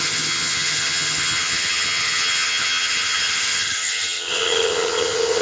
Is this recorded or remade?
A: remade